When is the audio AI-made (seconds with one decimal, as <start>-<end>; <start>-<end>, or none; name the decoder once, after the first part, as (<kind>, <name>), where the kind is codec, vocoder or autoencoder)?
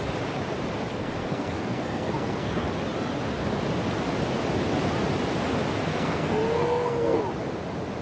0.9-2.7 (codec, SNAC); 5.9-7.2